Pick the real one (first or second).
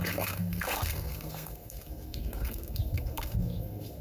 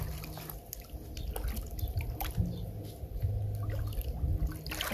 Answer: second